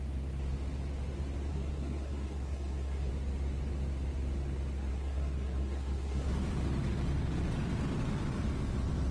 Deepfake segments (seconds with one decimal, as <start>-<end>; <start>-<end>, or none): 1.5-3.1; 4.9-6.4